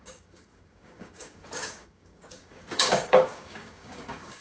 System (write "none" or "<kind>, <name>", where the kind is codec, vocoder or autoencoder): codec, DAC